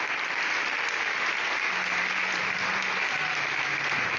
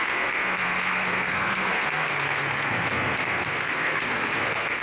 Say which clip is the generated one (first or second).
second